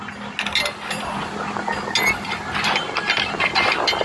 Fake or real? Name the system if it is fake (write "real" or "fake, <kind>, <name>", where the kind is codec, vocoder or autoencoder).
real